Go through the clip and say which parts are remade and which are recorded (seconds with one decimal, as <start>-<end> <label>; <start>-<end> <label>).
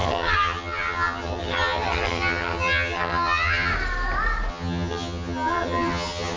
0.0-3.7 remade; 3.7-4.5 recorded; 4.5-6.4 remade